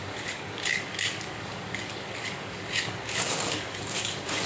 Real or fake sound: fake